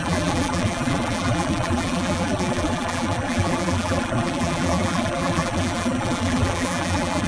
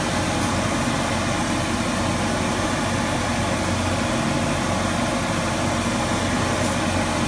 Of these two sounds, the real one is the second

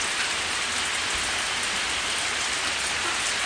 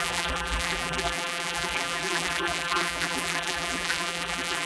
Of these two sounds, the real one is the first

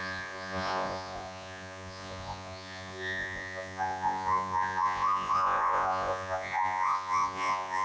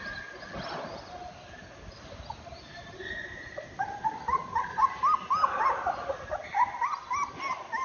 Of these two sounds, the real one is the second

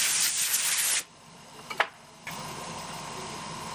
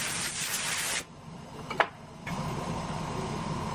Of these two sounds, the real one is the first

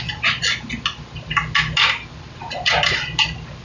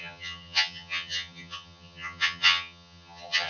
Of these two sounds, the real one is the first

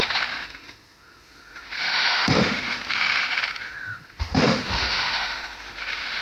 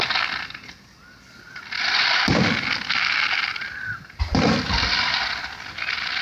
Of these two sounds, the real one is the second